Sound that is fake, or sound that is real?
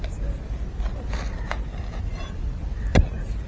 real